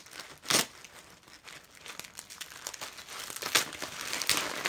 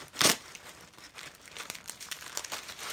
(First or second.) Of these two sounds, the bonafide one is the first